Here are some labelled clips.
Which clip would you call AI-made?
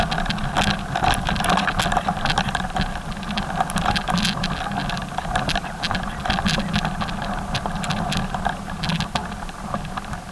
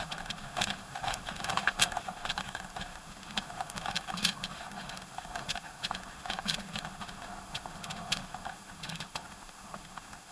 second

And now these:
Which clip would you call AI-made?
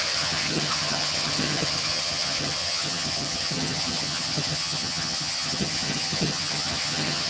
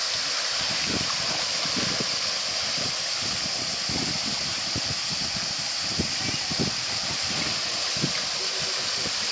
first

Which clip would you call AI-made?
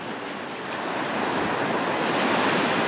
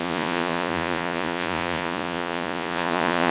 second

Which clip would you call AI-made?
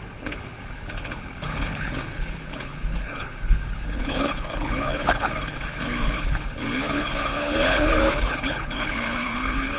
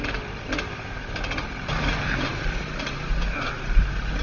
first